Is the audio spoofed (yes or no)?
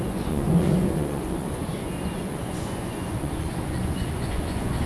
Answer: yes